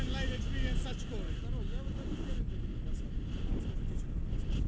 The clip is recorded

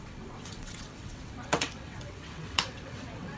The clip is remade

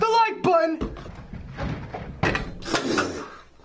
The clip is recorded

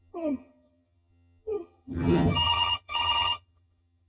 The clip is remade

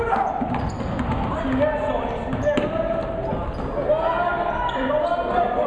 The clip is recorded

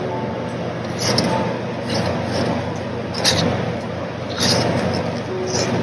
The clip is recorded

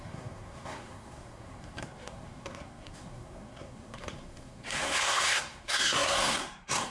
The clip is remade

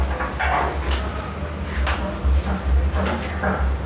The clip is recorded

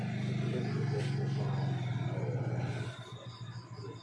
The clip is recorded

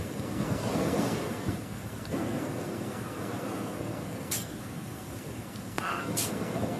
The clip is remade